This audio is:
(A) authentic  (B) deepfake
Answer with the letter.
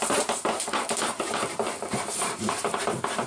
B